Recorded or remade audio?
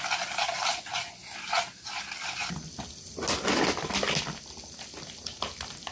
recorded